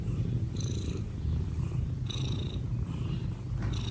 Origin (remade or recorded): remade